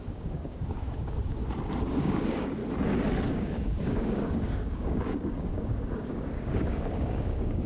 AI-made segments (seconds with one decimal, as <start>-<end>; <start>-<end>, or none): 0.0-1.4; 1.9-2.6; 3.3-7.7